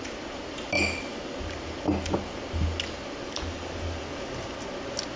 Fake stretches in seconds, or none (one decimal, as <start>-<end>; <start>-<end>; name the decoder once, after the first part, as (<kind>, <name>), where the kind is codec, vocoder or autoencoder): none